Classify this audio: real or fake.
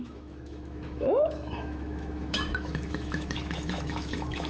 fake